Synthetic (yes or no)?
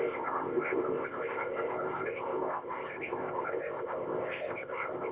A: yes